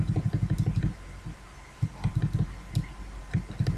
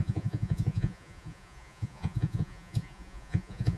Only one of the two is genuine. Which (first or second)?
first